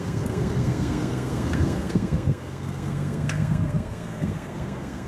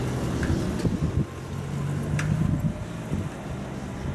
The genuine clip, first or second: second